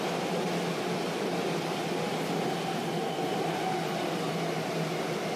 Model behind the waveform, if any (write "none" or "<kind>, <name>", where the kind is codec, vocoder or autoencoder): none